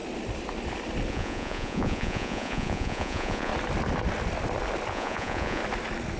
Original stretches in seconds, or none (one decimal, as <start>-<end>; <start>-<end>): 0.0-1.1; 3.5-4.9; 5.6-6.2

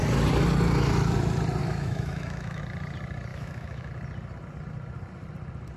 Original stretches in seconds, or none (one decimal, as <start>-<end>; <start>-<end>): 0.0-1.6; 2.6-3.3; 3.9-5.8

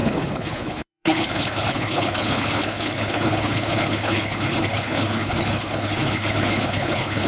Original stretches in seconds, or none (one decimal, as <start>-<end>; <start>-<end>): none

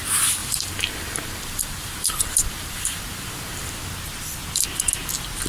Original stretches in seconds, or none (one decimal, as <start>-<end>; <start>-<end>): 0.0-0.4; 3.7-5.5

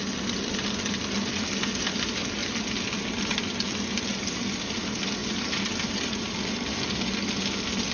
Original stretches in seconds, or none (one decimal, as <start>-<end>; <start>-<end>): 0.0-7.9